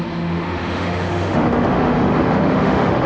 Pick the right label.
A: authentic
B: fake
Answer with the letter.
B